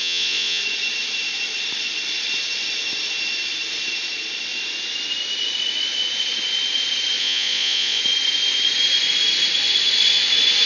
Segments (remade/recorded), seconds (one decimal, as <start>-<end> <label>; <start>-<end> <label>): 0.0-0.6 remade; 0.6-7.2 recorded; 7.2-8.0 remade; 8.0-10.7 recorded